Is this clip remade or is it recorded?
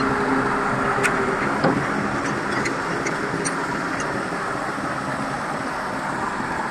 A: recorded